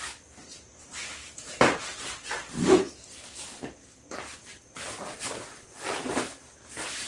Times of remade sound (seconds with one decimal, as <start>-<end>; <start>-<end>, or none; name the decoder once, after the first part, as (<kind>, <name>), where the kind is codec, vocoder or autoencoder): 0.9-1.5 (autoencoder, DAC-VAE)